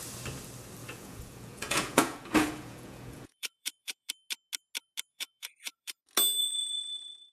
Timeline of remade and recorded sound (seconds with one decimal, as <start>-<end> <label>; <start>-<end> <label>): 0.0-0.8 recorded; 0.8-4.1 remade; 4.1-5.1 recorded; 5.1-6.0 remade; 6.0-6.4 recorded; 6.4-7.3 remade